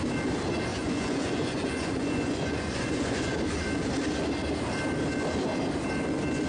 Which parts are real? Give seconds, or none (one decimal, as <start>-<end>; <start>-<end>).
0.0-0.7; 3.4-6.5